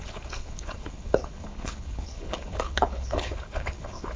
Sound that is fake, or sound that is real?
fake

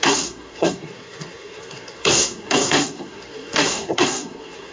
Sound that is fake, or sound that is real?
fake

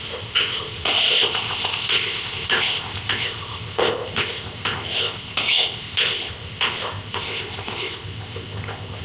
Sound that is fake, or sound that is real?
fake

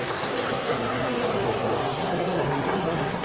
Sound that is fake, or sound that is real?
fake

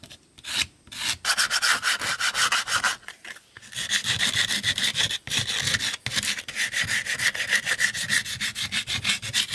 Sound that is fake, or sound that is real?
real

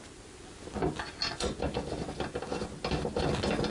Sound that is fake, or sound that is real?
real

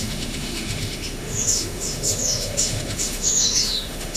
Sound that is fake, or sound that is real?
fake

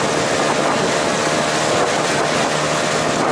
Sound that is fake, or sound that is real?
real